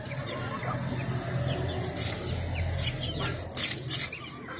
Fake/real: real